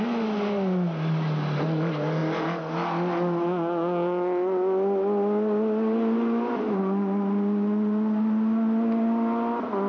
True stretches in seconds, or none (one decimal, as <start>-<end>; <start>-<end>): 0.0-9.9